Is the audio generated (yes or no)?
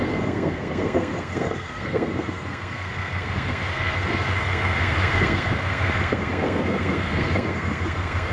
yes